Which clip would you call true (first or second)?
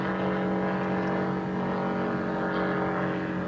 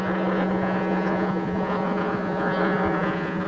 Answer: first